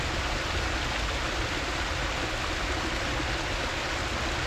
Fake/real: real